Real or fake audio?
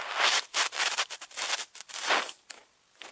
fake